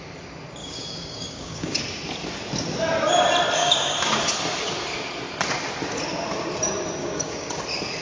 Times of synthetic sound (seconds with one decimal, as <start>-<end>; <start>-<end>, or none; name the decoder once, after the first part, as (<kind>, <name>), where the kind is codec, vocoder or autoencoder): 0.6-1.8 (codec, DAC); 3.6-4.3; 7.0-7.5